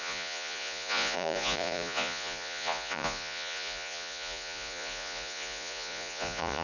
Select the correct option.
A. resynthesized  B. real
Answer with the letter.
A